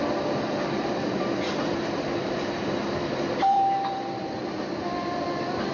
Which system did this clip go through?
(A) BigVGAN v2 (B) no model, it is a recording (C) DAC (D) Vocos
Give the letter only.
A